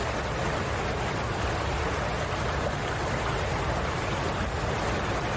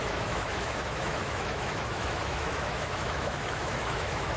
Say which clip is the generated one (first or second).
second